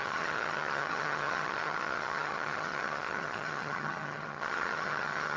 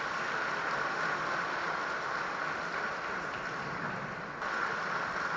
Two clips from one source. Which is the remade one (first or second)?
first